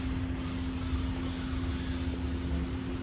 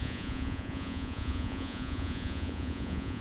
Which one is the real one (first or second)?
first